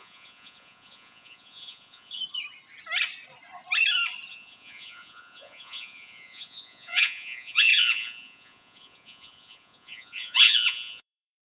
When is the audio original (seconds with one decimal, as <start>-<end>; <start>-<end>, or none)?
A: 2.2-4.3